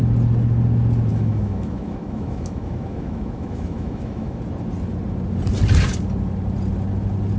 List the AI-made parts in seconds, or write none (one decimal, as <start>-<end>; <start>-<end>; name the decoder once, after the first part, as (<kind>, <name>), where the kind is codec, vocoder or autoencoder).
1.1-4.4 (autoencoder, DAC-VAE)